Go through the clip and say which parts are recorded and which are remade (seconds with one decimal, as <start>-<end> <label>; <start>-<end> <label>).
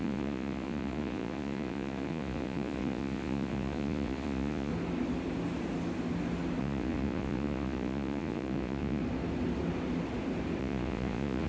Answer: 0.0-4.7 remade; 4.7-6.6 recorded; 6.6-9.0 remade; 9.0-10.6 recorded; 10.6-11.5 remade